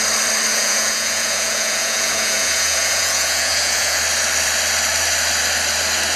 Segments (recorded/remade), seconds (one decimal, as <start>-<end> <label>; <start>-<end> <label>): 0.0-0.5 recorded; 0.5-4.0 remade; 4.0-6.2 recorded